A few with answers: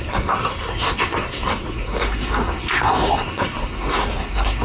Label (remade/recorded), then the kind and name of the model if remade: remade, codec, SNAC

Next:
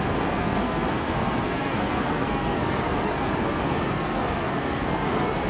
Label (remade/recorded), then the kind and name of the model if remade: remade, codec, SNAC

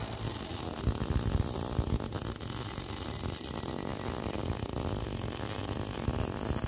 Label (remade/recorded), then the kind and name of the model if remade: recorded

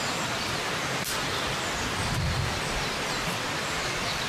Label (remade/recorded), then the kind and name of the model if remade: recorded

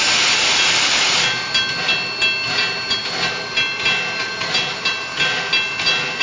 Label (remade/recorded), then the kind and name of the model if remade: recorded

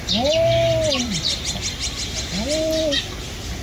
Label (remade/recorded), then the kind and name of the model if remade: recorded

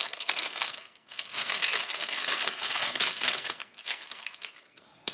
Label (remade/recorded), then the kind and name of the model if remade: remade, codec, SNAC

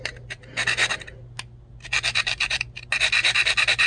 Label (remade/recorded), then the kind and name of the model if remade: recorded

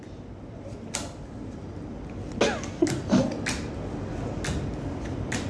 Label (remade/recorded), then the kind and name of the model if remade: recorded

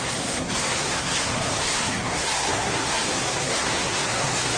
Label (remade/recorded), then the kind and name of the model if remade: remade, codec, SNAC